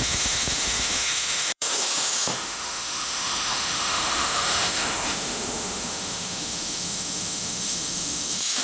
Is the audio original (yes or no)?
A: no